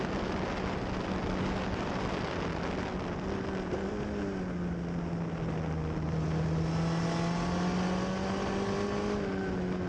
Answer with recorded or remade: recorded